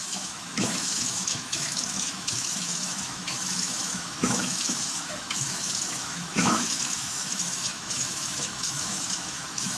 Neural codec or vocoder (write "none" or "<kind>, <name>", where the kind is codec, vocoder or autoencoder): autoencoder, DAC-VAE